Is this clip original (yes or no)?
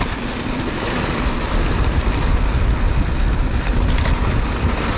yes